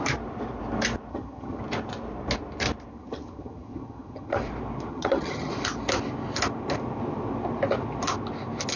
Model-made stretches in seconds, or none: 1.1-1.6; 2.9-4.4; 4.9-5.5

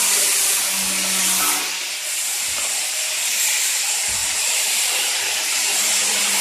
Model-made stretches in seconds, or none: 4.2-6.4